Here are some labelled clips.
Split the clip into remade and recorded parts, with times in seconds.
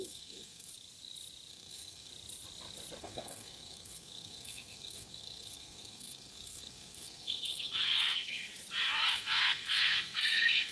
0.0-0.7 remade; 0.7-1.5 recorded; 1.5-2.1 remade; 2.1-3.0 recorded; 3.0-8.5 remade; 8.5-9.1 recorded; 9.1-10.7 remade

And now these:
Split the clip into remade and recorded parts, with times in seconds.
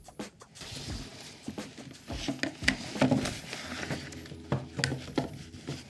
0.0-5.9 recorded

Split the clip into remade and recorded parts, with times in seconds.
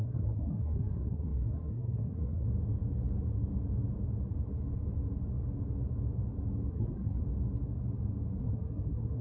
0.0-2.5 remade; 2.5-6.7 recorded; 6.7-7.2 remade; 7.2-8.4 recorded; 8.4-9.2 remade